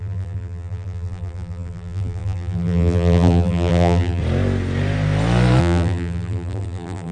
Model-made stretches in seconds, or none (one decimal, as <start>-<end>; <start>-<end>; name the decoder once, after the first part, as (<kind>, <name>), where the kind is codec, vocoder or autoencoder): 0.0-4.2 (vocoder, BigVGAN v2); 5.6-7.1